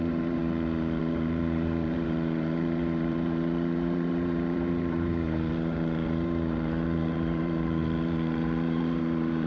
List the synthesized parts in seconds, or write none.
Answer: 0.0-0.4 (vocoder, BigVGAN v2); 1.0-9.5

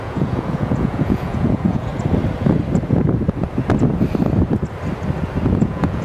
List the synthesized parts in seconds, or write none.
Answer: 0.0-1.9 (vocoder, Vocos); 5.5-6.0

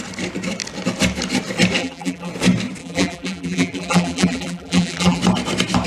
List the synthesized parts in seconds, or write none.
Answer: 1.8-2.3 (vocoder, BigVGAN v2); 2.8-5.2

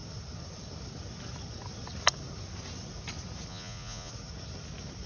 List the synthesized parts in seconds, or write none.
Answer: 3.5-4.1 (vocoder, Vocos)

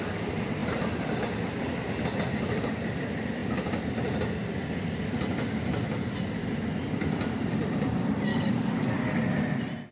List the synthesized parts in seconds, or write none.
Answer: 8.3-9.2 (codec, DAC)

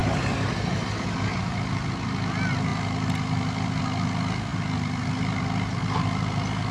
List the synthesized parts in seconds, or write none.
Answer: none

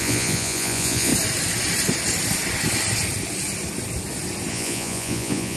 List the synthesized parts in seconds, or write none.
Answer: 0.0-1.1 (vocoder, Vocos); 4.5-5.6

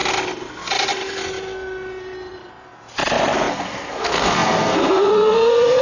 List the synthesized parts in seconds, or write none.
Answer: 3.5-5.8 (codec, SNAC)